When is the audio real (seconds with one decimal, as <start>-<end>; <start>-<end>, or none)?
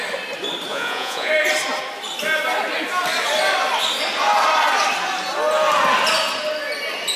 0.0-0.7; 1.3-7.2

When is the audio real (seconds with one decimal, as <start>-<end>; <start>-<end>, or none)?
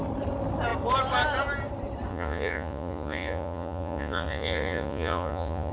0.0-2.1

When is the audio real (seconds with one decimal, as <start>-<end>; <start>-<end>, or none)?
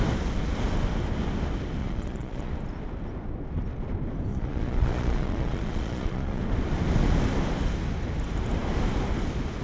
0.0-1.8; 2.5-4.3; 6.4-9.6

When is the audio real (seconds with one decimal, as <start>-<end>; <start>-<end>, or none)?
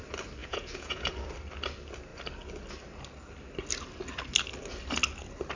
0.0-0.4; 1.1-5.5